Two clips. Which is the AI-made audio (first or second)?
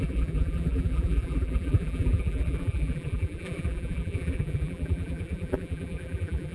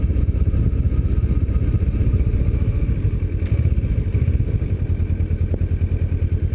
first